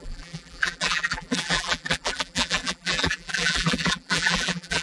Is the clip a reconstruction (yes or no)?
yes